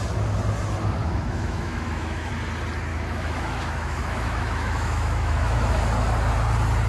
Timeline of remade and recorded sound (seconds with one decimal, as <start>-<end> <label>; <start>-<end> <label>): 0.0-1.0 recorded; 1.0-2.3 remade; 2.3-2.9 recorded; 2.9-5.8 remade; 5.8-6.9 recorded